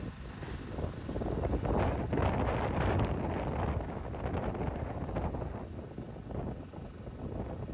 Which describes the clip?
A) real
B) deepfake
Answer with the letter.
A